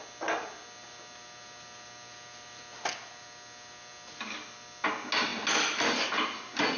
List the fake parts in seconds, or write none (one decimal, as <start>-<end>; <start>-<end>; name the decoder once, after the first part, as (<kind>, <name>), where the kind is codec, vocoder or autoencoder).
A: none